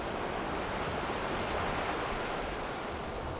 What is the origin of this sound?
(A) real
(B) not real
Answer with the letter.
A